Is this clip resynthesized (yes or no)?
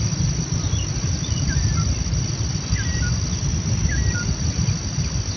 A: no